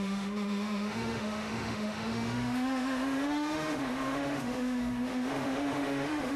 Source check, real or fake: fake